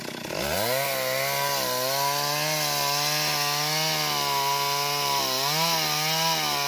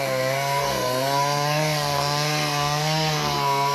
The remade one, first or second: second